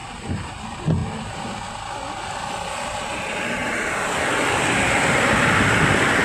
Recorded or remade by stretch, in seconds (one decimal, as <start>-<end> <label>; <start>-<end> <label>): 0.0-0.6 remade; 0.6-3.6 recorded; 3.6-4.2 remade; 4.2-6.2 recorded